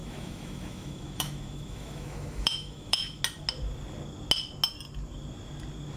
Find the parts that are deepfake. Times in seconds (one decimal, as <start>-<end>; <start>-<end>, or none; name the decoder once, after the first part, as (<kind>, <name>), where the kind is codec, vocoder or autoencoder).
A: 0.0-3.2 (autoencoder, DAC-VAE)